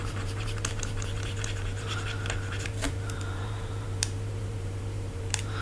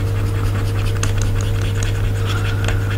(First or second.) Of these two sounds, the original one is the second